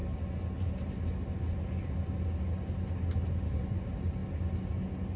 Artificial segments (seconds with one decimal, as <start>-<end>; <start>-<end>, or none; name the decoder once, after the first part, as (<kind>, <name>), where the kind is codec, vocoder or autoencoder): none

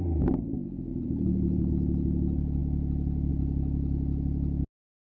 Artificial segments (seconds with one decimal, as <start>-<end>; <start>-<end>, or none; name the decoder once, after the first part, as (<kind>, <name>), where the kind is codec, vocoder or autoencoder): 0.9-1.7 (vocoder, BigVGAN v2)

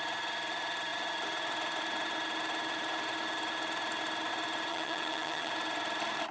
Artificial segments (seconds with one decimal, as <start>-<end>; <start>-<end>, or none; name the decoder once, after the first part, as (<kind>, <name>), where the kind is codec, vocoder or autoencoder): 4.7-5.5 (vocoder, HiFi-GAN)

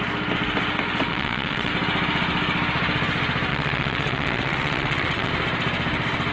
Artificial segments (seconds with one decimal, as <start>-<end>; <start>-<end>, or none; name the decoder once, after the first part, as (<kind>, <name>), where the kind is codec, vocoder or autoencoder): 1.1-1.7 (vocoder, WaveNeXt); 3.5-5.3